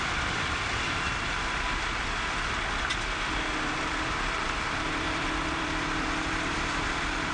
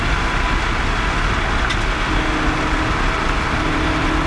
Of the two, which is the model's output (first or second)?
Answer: first